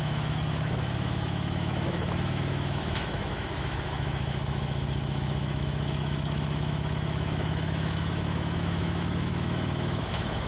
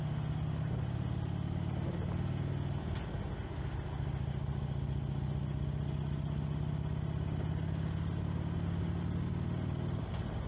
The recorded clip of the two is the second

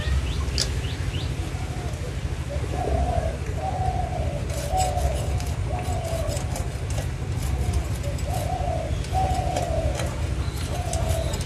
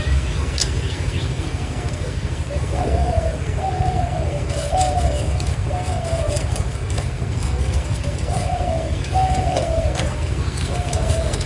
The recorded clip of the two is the first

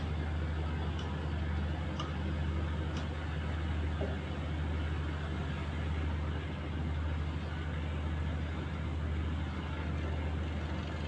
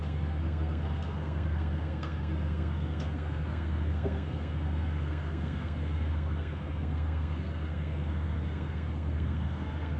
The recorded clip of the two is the first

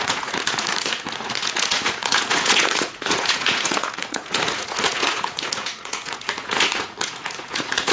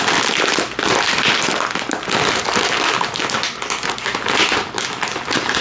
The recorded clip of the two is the second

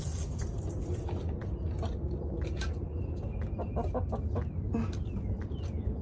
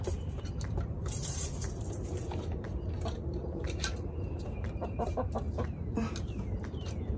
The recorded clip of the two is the first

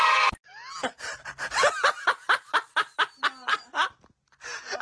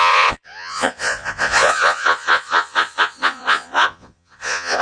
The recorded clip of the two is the first